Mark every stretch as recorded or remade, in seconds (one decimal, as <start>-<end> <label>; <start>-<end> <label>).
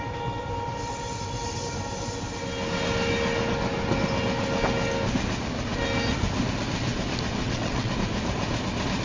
0.0-7.4 recorded; 7.4-7.9 remade; 7.9-9.0 recorded